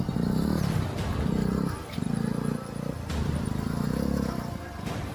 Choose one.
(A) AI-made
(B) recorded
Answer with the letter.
B